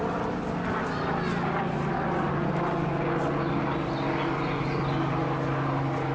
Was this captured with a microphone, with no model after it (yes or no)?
yes